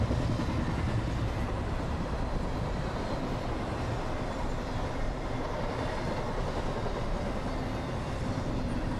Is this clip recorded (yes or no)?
yes